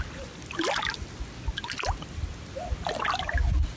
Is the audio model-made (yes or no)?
no